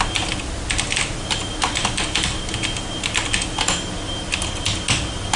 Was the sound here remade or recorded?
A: recorded